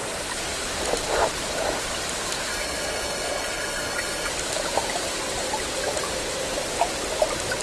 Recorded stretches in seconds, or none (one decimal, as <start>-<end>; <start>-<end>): 0.0-2.5; 4.3-7.6